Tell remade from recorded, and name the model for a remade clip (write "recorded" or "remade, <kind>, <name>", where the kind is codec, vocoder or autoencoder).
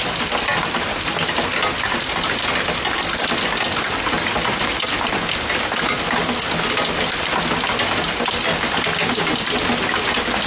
recorded